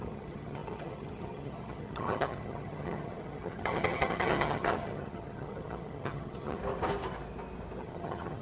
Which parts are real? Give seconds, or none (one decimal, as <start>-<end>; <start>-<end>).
6.6-7.8